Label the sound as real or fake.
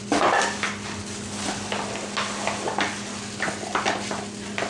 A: real